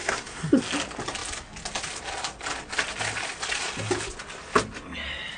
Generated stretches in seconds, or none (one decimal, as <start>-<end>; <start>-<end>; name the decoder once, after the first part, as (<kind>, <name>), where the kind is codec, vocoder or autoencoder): 0.0-0.6 (codec, SNAC)

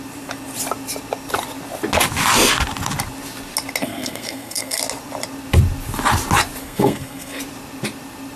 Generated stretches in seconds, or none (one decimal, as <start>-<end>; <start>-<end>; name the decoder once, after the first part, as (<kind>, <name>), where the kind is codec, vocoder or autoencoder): 3.8-4.8 (codec, SNAC); 6.6-7.4

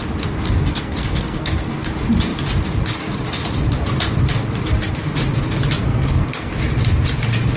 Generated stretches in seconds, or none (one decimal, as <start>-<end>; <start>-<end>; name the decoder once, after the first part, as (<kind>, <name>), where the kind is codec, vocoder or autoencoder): 0.7-1.9 (codec, SNAC); 5.8-6.5

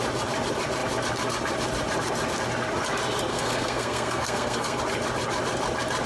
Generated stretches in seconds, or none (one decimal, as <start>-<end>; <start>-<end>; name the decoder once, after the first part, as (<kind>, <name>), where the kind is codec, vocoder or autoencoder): 3.3-4.8 (codec, SNAC)

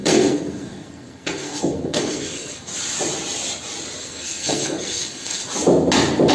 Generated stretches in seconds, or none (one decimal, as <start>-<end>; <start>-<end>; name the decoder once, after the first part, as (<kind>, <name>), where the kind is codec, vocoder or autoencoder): 0.0-2.7 (codec, SNAC); 4.0-5.4

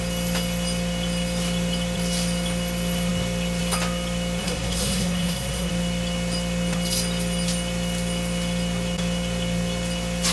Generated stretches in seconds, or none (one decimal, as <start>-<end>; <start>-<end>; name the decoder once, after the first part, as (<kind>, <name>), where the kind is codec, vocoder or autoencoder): 4.4-5.7 (codec, SNAC)